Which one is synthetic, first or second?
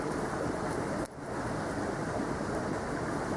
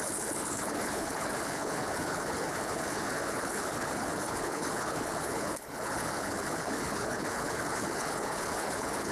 second